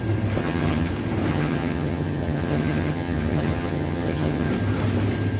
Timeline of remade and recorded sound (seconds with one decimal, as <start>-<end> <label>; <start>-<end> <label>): 0.0-0.4 recorded; 0.4-0.9 remade; 0.9-1.3 recorded; 1.3-4.5 remade; 4.5-5.4 recorded